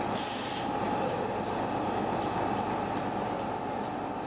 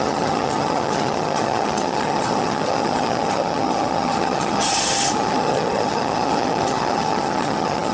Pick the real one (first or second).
first